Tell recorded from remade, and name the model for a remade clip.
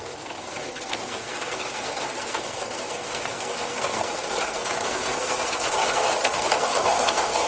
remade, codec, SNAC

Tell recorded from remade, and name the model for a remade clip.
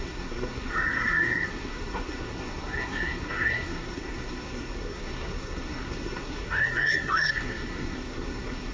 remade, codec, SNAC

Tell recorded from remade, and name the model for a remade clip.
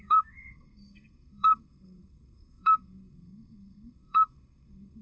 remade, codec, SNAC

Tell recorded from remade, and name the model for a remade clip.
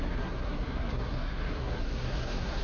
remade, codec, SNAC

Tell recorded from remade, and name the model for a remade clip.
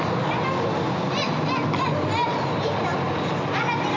recorded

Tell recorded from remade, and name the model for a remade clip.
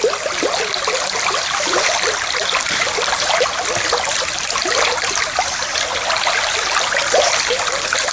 recorded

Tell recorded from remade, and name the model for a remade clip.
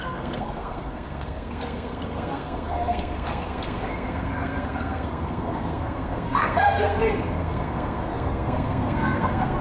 remade, codec, SNAC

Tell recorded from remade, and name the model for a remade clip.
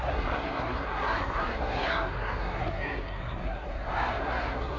remade, codec, SNAC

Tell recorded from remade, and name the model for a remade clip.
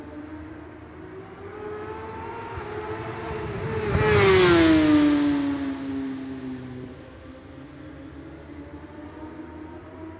recorded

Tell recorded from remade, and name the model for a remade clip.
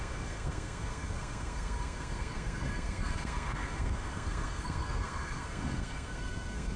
remade, codec, SNAC